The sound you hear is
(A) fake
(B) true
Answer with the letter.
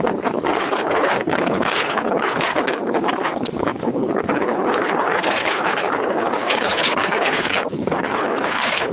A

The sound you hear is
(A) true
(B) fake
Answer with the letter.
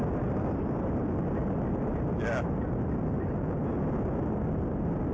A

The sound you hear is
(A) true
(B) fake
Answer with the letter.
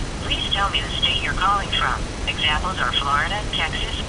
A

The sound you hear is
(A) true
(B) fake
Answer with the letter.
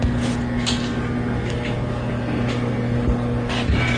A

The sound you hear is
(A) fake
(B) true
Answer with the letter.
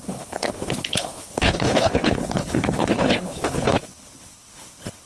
A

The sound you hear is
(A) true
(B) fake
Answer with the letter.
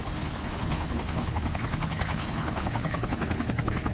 B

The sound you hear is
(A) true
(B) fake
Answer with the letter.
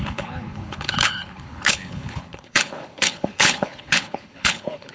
B